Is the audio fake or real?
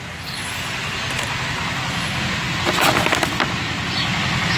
real